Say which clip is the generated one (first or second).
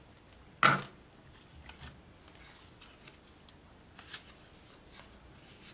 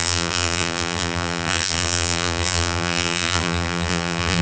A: second